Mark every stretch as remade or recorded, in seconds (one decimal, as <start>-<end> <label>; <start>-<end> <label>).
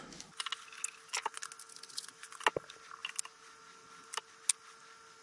0.0-5.2 recorded